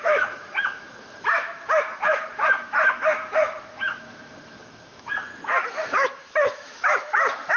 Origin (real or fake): fake